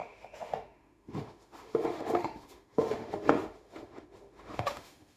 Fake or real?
fake